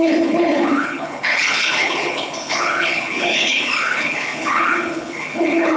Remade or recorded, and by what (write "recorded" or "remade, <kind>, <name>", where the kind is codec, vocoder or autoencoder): remade, codec, HILCodec